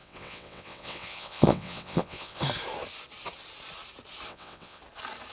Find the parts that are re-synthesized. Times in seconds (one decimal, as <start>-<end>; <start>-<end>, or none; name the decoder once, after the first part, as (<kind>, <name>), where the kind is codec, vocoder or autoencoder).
0.0-2.4 (vocoder, WaveNeXt); 4.3-4.8